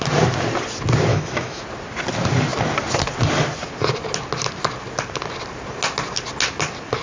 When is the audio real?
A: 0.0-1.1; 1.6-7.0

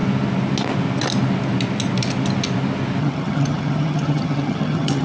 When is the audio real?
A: 0.0-3.0

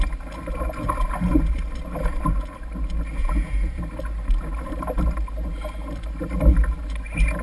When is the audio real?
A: 0.0-3.2; 3.8-7.4

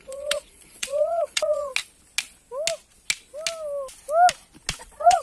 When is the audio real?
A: 1.7-4.8

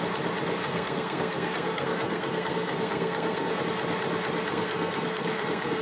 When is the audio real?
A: 0.0-0.6; 3.6-4.5

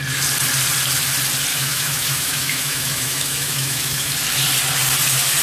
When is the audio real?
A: 0.0-1.5; 4.1-5.4

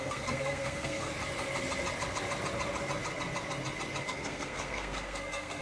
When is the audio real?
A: 1.1-4.0

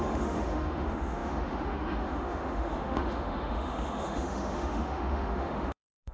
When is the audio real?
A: none